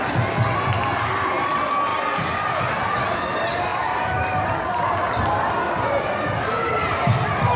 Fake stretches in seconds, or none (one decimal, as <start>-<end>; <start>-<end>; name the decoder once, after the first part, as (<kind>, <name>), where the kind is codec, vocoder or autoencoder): none